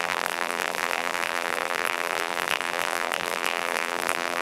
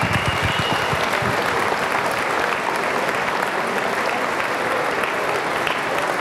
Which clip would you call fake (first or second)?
first